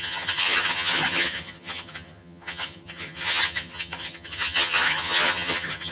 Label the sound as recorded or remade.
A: remade